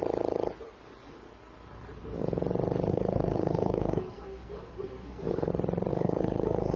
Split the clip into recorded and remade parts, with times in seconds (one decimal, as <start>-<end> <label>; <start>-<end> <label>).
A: 0.0-2.9 recorded; 2.9-5.5 remade; 5.5-5.9 recorded; 5.9-6.8 remade